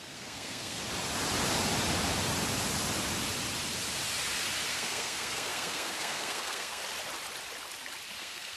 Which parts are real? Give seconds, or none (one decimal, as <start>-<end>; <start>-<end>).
0.8-4.7; 6.8-8.2